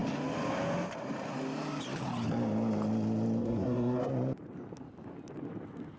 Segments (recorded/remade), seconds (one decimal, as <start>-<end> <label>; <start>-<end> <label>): 0.0-3.4 recorded; 3.4-4.1 remade; 4.1-6.0 recorded